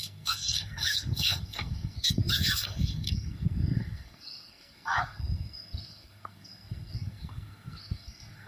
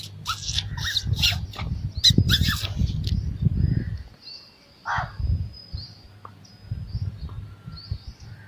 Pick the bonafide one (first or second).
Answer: second